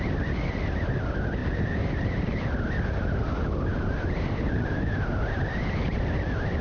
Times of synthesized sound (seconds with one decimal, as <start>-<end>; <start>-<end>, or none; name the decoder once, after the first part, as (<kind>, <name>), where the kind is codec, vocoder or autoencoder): 1.4-2.5 (vocoder, BigVGAN v2); 3.7-5.5